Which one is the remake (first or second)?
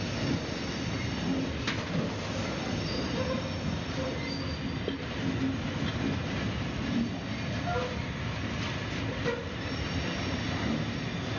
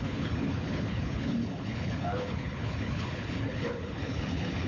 second